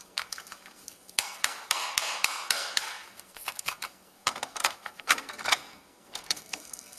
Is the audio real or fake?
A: fake